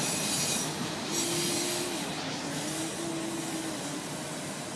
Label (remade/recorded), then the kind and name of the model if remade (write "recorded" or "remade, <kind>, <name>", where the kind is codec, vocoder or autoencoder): recorded